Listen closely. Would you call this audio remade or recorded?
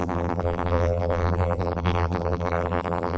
remade